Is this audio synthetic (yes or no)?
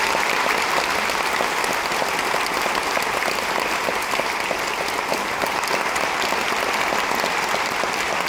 no